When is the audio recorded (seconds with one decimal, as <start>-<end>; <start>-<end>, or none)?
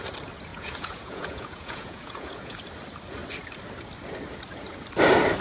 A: 0.0-0.5; 2.6-5.4